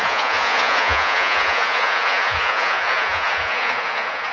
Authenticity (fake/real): fake